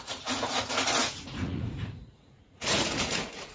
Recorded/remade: remade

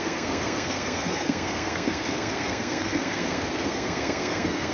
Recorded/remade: remade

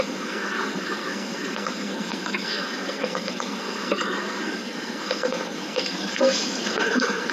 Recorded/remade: remade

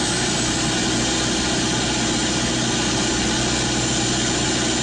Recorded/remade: recorded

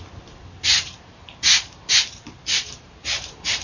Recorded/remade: remade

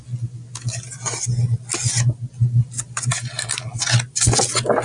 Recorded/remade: recorded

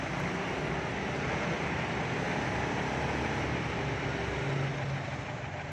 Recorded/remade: recorded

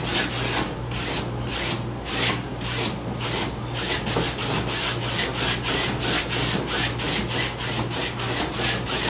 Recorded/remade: recorded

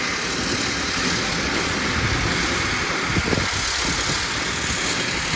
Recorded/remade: recorded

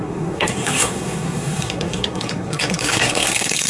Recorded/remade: remade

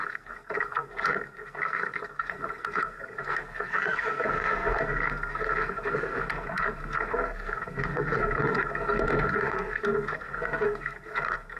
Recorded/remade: remade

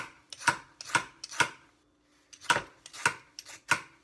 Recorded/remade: recorded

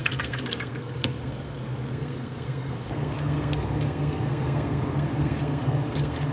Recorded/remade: remade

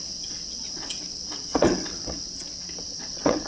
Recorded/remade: remade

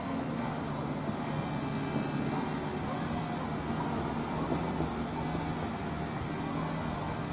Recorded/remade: recorded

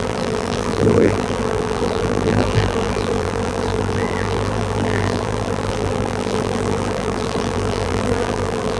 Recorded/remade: remade